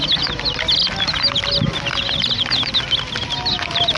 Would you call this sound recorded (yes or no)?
yes